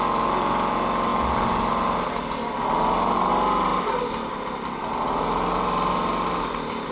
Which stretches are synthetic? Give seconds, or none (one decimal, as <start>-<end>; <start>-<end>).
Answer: none